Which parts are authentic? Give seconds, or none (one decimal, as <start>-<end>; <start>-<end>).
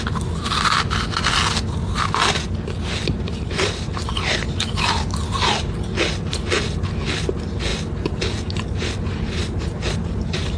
0.0-10.6